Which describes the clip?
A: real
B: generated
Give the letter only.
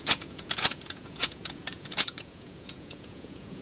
B